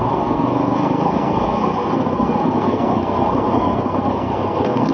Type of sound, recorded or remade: remade